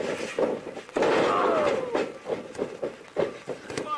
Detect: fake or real real